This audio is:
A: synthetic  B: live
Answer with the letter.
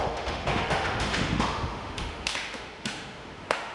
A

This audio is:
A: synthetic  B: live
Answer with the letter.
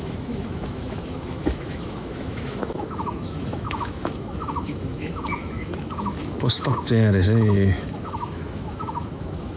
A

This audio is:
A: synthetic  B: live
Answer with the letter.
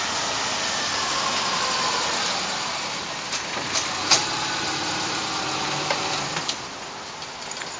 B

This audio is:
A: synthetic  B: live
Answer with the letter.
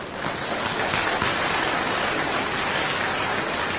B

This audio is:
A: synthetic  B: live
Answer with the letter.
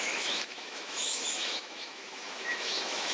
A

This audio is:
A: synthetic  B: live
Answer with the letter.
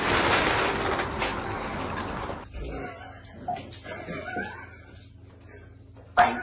B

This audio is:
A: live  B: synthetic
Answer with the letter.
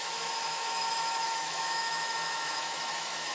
B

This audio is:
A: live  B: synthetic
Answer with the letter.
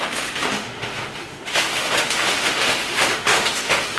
B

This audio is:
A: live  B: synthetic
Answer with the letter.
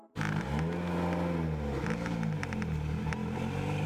A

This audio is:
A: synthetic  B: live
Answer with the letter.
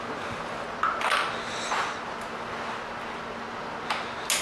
B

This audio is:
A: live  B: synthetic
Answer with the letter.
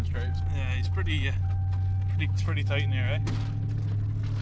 A